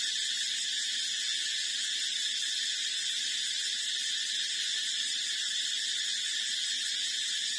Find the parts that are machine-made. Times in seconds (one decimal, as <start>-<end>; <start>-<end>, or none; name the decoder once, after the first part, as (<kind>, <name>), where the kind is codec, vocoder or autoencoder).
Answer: none